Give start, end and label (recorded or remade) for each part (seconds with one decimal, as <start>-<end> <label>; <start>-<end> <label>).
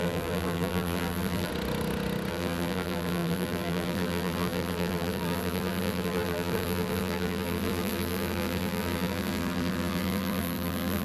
0.0-1.5 remade; 1.5-2.3 recorded; 2.3-11.0 remade